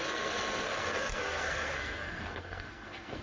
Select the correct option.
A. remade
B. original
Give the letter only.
A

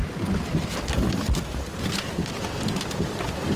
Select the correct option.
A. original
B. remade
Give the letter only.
A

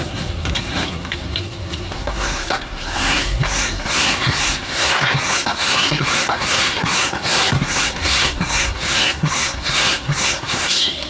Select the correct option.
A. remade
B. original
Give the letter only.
A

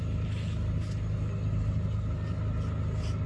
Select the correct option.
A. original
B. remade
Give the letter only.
A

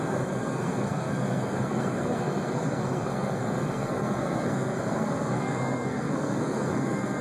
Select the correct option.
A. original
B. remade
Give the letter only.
B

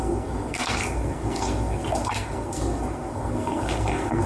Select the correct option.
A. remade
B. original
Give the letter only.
A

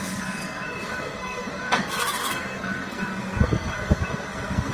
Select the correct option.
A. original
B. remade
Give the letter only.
B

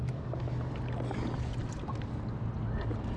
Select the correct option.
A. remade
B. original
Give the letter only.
B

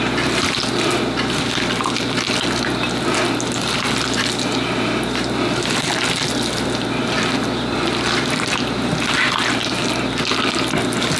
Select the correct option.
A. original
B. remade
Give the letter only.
A